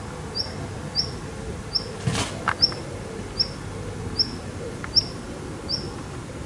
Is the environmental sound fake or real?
real